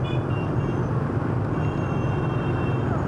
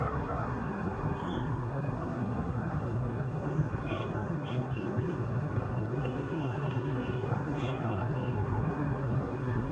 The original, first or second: first